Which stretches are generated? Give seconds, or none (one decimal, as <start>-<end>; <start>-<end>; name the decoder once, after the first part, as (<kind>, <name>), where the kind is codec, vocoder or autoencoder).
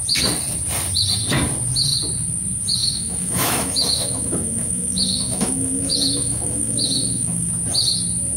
2.8-7.5 (autoencoder, DAC-VAE)